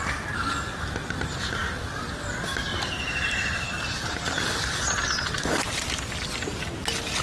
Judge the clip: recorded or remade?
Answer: recorded